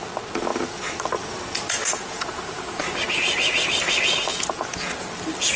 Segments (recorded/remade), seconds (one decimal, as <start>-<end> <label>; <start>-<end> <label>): 0.0-1.9 recorded; 1.9-2.8 remade; 2.8-4.3 recorded; 4.3-5.1 remade; 5.1-5.6 recorded